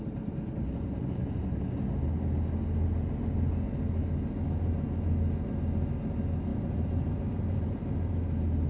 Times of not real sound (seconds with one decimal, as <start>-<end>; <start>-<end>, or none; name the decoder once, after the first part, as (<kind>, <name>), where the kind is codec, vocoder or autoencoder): 6.5-7.8 (vocoder, BigVGAN v2)